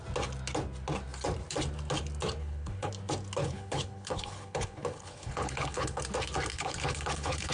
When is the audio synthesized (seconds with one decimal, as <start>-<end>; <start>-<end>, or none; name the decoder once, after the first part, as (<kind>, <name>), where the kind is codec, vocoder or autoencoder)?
2.4-2.9 (codec, HILCodec); 3.4-6.0; 6.5-7.5